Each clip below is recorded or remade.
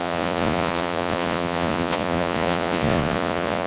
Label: remade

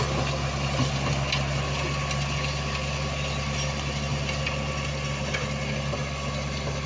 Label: recorded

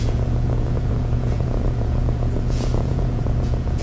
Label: remade